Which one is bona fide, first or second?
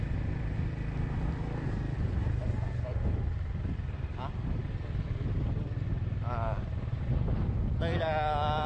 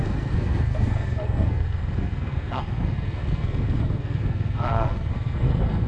first